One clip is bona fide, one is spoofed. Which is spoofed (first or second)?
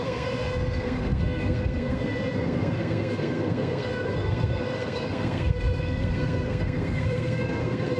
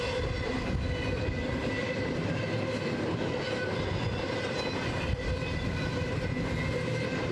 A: first